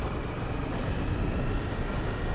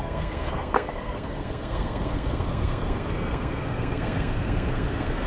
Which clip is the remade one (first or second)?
second